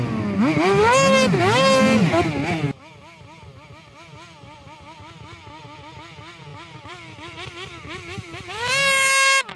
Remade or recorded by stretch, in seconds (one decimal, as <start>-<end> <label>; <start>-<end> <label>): 0.0-6.5 recorded; 6.5-8.4 remade; 8.4-9.6 recorded

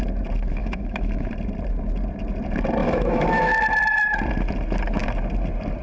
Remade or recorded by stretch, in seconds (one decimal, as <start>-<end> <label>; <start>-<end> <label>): 0.0-0.6 recorded; 0.6-1.3 remade; 1.3-2.8 recorded; 2.8-3.6 remade; 3.6-5.8 recorded

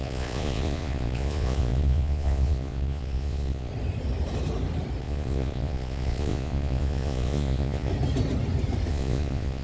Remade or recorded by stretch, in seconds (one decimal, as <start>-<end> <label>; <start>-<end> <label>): 0.0-3.7 remade; 3.7-5.0 recorded; 5.0-7.9 remade; 7.9-8.9 recorded; 8.9-9.6 remade

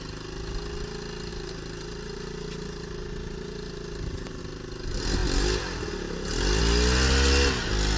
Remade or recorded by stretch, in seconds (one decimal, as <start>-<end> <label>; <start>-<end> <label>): 0.0-1.3 recorded; 1.3-4.4 remade; 4.4-8.0 recorded

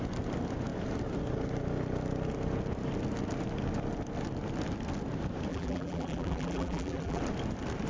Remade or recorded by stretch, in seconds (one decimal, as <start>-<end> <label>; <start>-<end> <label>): 0.0-5.5 recorded; 5.5-7.2 remade; 7.2-7.9 recorded